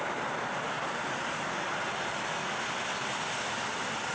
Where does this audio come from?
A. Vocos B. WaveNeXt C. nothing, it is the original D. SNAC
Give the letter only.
C